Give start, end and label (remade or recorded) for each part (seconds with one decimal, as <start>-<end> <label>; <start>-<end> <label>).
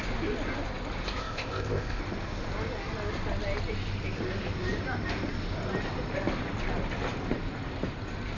0.0-1.2 recorded; 1.2-2.0 remade; 2.0-8.4 recorded